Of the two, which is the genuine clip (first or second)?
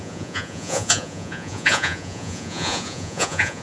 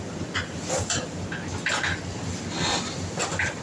second